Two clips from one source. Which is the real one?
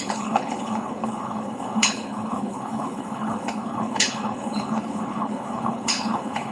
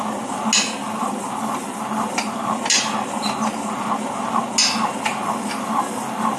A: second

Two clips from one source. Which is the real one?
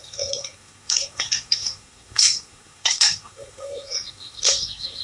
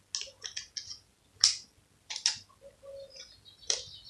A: second